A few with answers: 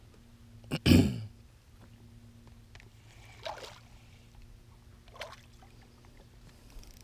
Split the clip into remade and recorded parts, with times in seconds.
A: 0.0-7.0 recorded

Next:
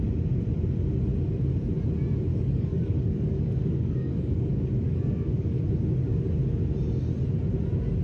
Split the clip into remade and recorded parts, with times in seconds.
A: 0.0-2.3 recorded; 2.3-5.6 remade; 5.6-8.0 recorded

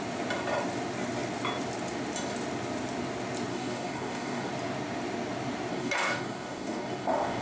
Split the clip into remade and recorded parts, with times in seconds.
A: 0.0-3.5 recorded; 3.5-4.5 remade; 4.5-5.7 recorded; 5.7-7.4 remade